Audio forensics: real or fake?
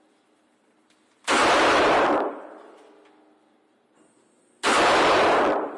real